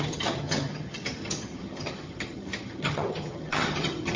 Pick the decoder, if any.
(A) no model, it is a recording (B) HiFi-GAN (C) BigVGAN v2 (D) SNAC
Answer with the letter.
B